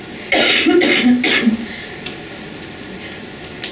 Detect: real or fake real